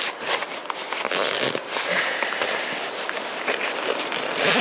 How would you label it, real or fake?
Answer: real